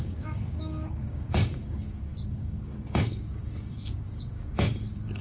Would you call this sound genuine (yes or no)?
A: no